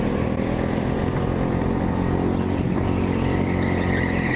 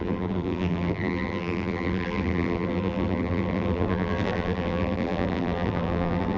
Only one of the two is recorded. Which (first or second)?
first